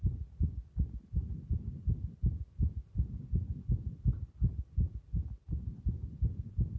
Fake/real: real